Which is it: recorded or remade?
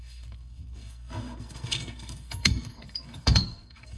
remade